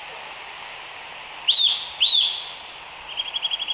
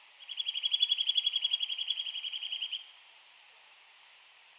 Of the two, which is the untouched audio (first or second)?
first